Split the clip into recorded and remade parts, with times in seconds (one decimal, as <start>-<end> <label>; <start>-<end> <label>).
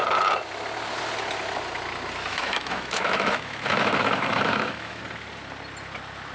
0.0-2.3 recorded; 2.3-5.0 remade; 5.0-6.3 recorded